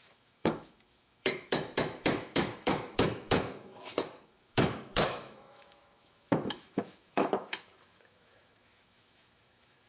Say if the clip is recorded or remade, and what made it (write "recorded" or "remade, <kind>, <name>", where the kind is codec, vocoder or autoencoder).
remade, autoencoder, DAC-VAE